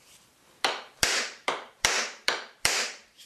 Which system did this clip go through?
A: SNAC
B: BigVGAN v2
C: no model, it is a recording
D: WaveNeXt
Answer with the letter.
B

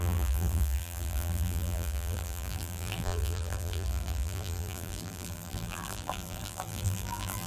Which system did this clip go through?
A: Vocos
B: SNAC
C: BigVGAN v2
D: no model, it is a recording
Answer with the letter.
C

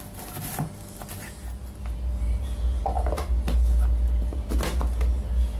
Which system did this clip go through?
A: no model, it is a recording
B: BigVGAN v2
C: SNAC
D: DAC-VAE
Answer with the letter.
A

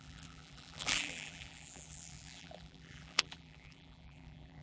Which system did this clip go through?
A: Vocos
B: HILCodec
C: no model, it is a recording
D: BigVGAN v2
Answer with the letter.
D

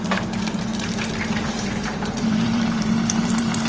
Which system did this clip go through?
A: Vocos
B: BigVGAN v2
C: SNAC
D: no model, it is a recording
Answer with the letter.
B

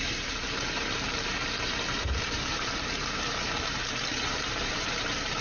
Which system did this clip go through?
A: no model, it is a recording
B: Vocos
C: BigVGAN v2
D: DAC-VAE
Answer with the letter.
C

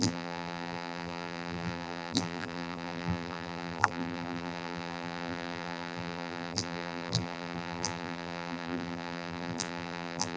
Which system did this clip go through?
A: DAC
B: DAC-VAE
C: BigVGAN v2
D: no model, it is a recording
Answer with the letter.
C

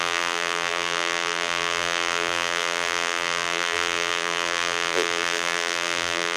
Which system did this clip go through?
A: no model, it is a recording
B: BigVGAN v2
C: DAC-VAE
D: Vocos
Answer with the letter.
B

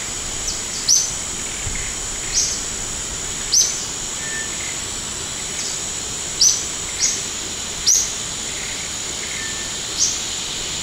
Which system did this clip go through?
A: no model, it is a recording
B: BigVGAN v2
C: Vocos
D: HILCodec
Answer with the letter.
A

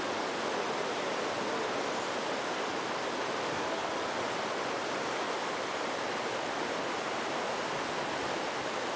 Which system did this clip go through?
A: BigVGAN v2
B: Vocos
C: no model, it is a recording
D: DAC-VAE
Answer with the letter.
C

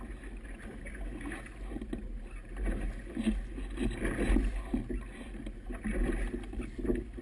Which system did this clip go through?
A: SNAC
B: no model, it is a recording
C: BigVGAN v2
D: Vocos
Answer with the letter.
B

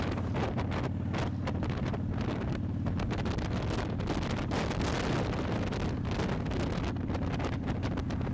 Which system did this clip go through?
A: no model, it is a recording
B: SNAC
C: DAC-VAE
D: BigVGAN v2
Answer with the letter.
A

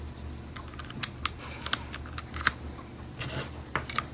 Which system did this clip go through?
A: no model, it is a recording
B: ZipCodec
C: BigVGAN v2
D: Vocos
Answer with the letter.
A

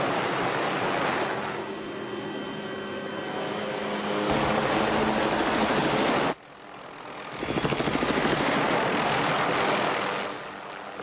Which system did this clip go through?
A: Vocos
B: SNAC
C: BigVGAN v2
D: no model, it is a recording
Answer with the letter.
D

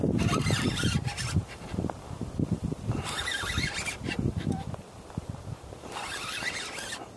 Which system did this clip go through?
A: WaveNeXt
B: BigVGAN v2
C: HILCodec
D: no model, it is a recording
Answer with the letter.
B